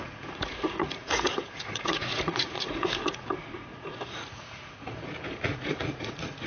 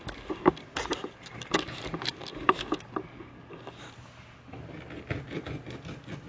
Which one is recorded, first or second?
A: second